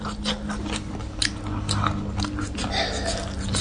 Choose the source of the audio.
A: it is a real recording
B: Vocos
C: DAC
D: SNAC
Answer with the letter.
A